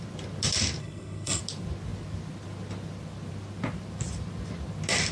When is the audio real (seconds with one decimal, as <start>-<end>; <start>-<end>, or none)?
0.0-0.8; 1.4-5.1